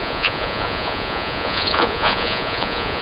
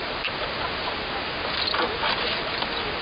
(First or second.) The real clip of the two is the second